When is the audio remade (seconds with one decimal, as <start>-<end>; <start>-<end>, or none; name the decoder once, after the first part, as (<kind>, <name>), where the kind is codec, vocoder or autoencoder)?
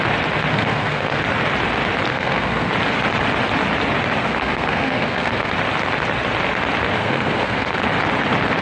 0.5-1.2 (codec, SNAC); 2.1-2.7; 4.2-5.5; 7.0-7.8